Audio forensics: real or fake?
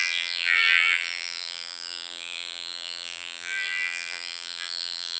fake